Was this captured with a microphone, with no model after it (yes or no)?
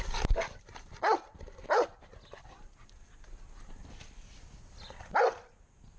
yes